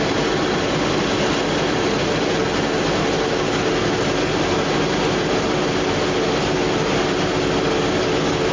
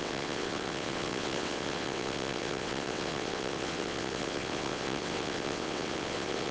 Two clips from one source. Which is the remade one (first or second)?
second